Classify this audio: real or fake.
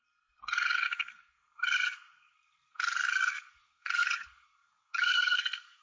fake